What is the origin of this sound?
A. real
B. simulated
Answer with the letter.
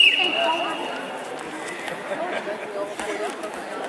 A